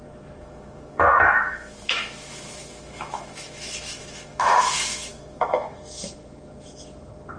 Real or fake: fake